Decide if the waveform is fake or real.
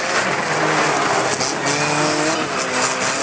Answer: real